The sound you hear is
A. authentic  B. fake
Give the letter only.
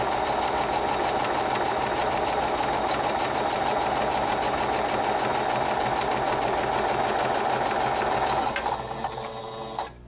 A